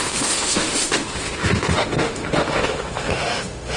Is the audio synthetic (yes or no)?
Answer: yes